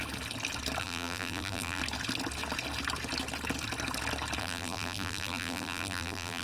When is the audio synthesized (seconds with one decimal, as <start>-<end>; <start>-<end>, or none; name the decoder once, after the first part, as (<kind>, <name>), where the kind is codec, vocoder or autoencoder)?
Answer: 0.8-1.8 (vocoder, BigVGAN v2); 4.4-6.4